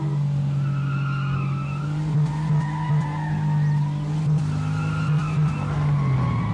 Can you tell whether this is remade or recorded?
recorded